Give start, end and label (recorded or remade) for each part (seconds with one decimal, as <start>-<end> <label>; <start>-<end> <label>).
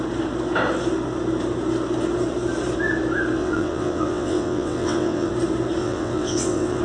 0.0-3.4 recorded; 3.4-5.3 remade; 5.3-5.8 recorded; 5.8-6.8 remade